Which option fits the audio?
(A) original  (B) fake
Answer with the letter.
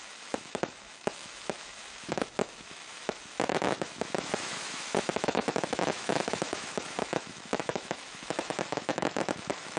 B